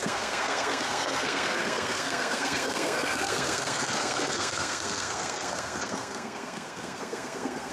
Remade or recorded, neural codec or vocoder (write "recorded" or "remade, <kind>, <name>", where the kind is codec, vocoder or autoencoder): remade, codec, SNAC